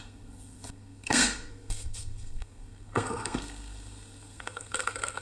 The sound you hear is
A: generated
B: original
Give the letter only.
A